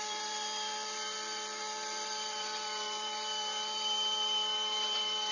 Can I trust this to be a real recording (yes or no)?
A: no